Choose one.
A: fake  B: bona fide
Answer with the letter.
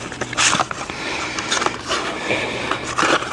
A